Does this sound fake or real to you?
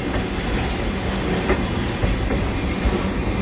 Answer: fake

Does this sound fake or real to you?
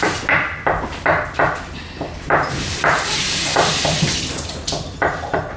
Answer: fake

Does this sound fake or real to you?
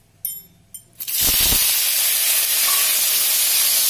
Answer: real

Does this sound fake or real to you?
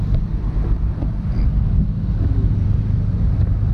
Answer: real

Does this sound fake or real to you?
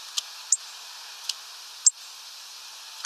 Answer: real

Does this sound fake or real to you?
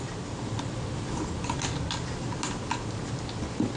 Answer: real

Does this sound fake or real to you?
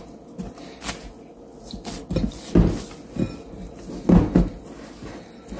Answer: real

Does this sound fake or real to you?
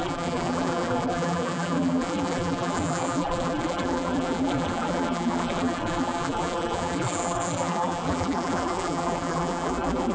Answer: fake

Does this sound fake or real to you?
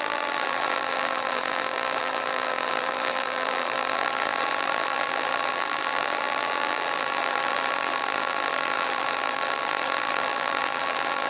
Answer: fake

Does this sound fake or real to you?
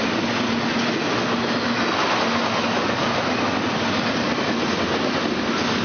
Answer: real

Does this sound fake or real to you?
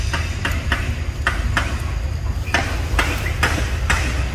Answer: real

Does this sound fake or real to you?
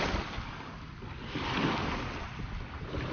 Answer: real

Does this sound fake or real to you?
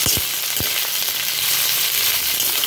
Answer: real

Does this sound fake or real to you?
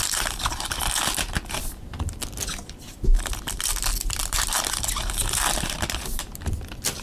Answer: fake